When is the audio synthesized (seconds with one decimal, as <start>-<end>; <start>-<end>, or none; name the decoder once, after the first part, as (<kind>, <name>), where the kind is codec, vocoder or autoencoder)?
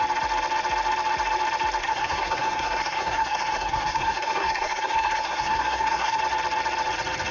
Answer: 1.8-6.2 (codec, SNAC)